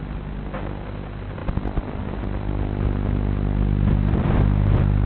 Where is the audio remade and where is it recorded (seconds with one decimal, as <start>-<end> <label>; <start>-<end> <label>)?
0.0-5.1 recorded